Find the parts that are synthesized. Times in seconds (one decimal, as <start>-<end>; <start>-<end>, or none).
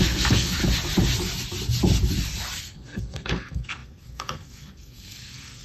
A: 0.0-0.6; 2.6-5.6